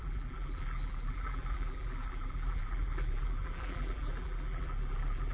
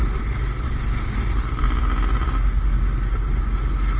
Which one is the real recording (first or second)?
second